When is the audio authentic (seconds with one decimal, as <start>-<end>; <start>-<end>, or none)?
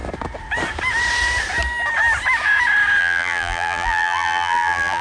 0.0-3.0